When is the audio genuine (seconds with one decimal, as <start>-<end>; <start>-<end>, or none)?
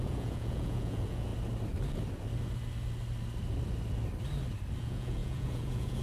1.3-4.8